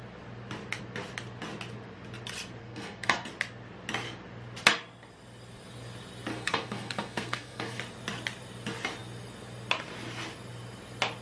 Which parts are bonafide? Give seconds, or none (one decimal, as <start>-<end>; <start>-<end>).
0.0-2.6; 3.3-6.3; 7.8-11.2